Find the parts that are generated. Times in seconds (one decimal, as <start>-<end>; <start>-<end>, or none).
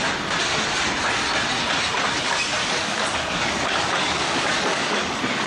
2.6-5.5